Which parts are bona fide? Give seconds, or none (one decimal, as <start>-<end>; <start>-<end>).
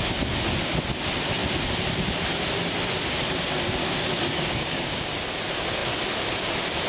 0.0-3.8; 5.2-6.9